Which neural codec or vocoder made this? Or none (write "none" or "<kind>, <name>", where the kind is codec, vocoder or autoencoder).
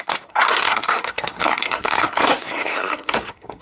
codec, SNAC